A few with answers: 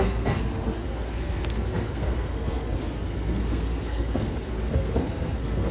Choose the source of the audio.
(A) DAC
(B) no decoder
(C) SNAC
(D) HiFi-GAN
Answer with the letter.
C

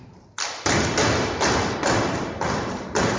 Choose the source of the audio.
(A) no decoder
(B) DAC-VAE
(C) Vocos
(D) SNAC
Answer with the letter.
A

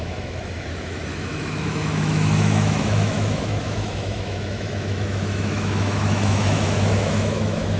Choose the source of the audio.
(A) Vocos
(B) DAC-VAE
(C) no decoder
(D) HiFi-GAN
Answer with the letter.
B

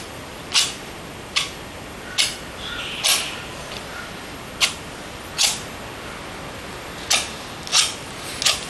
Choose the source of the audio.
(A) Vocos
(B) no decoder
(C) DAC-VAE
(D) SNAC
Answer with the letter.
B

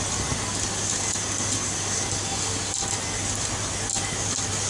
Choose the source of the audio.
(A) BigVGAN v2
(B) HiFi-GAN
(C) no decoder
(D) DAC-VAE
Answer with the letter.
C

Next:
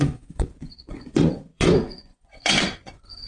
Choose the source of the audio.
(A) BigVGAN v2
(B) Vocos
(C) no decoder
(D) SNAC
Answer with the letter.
B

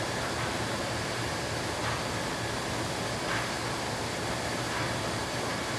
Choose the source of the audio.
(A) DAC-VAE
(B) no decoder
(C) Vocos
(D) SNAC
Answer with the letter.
B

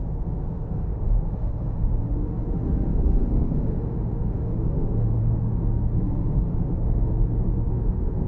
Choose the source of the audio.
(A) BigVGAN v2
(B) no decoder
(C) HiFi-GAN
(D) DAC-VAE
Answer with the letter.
D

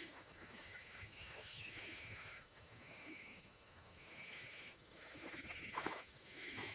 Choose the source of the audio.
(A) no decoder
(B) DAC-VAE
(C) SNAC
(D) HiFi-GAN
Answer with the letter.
B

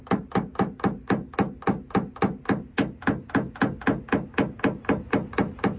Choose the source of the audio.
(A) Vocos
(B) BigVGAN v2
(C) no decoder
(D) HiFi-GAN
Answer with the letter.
C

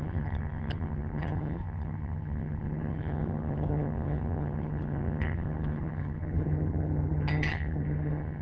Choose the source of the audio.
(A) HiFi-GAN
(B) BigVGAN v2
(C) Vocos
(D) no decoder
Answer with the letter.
A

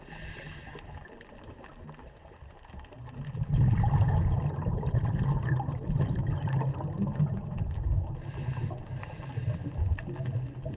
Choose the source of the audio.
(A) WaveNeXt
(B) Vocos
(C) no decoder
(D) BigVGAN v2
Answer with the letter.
C